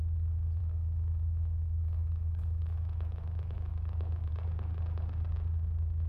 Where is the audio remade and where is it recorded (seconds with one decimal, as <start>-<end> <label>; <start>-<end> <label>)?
0.0-0.6 recorded; 0.6-4.3 remade; 4.3-6.1 recorded